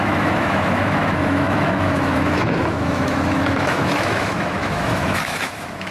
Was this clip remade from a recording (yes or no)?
yes